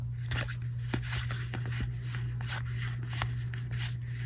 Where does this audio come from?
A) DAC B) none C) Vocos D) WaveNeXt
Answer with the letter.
B